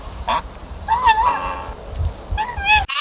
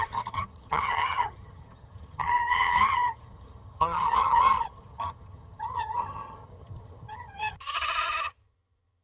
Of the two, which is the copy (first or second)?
second